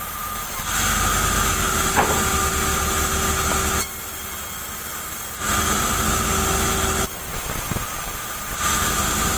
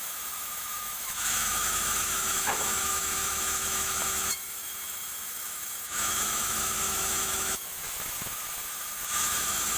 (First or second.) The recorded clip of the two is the first